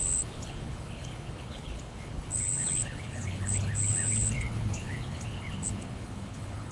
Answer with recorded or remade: remade